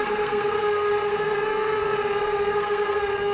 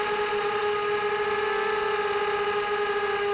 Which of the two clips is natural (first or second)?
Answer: second